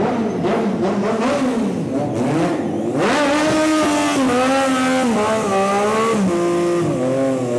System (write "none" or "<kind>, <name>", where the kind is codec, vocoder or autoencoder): none